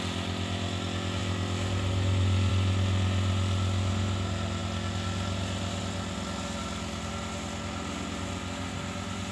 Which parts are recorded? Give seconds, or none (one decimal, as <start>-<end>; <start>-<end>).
0.0-9.3